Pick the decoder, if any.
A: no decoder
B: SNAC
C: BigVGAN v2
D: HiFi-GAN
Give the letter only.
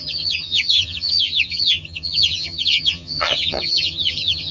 D